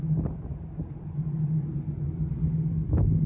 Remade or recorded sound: recorded